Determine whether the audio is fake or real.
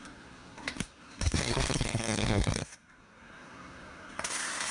fake